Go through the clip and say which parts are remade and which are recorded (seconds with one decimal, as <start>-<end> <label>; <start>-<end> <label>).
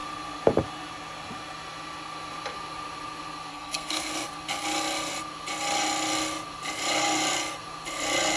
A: 0.0-3.5 recorded; 3.5-4.1 remade; 4.1-8.4 recorded